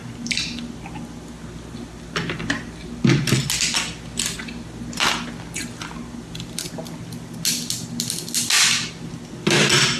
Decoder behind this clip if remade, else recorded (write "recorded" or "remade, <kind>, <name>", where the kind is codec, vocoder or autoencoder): recorded